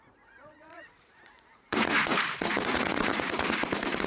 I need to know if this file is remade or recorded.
remade